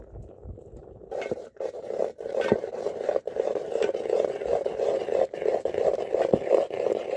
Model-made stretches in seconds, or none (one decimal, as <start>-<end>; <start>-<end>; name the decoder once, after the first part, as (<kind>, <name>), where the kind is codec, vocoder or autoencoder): 0.8-5.0 (vocoder, BigVGAN v2)